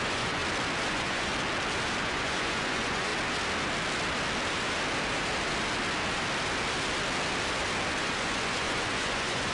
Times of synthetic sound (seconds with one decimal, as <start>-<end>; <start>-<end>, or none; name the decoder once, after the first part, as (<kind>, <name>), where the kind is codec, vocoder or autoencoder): 0.0-0.4 (vocoder, Vocos); 0.9-1.3; 2.0-3.1; 8.0-9.5